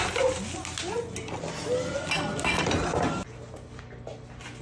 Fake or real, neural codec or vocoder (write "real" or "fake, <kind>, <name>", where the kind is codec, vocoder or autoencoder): real